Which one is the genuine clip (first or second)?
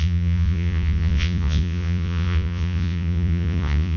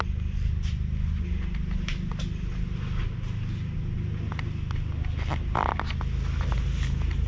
second